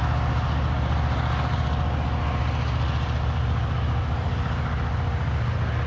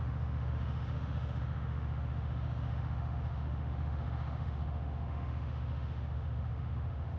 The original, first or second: first